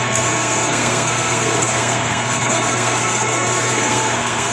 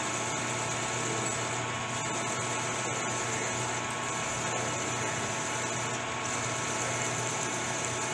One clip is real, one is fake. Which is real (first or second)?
second